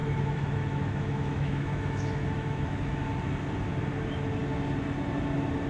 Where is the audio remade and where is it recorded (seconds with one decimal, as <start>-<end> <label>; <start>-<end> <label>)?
0.0-3.0 remade; 3.0-5.7 recorded